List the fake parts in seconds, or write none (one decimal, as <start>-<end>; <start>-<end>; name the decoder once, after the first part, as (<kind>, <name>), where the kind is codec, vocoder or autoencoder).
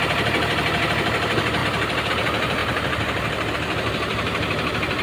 1.6-2.1 (vocoder, BigVGAN v2); 2.6-3.5; 4.1-5.0